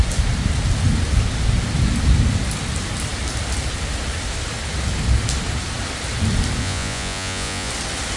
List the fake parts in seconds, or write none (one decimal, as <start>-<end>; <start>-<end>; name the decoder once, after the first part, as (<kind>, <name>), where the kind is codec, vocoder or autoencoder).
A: 6.6-7.7 (vocoder, Vocos)